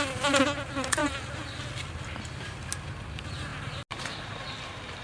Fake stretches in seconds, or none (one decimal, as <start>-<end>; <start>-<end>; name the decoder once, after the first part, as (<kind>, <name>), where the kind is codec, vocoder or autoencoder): none